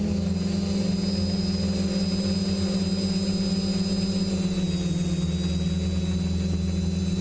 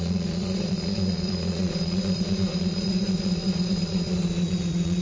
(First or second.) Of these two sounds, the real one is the first